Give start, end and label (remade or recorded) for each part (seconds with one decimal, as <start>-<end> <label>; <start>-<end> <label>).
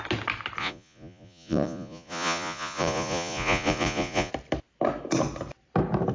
0.0-0.6 recorded; 0.6-4.3 remade; 4.3-6.1 recorded